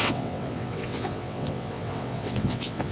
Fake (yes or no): yes